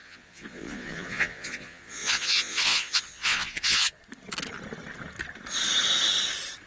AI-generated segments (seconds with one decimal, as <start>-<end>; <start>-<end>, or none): 0.0-4.0

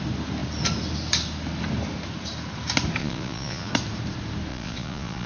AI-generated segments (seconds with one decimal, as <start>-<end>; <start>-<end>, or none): 3.0-3.7; 4.5-5.3

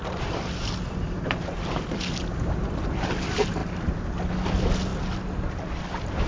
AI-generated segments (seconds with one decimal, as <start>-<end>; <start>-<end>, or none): none

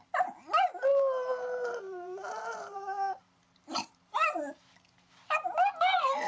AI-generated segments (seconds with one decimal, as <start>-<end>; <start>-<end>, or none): 0.9-4.7